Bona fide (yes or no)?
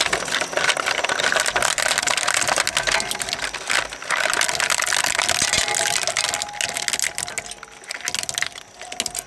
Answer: yes